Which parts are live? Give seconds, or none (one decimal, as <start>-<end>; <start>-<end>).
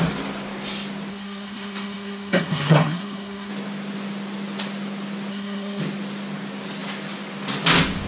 0.0-1.1; 3.5-5.3; 5.8-8.1